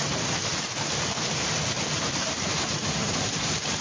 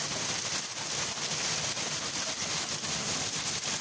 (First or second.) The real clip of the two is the second